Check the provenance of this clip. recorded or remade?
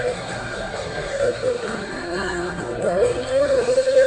remade